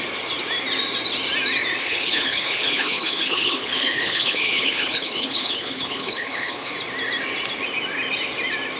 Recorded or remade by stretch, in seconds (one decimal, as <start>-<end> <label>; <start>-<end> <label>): 0.0-1.8 recorded; 1.8-6.7 remade; 6.7-8.8 recorded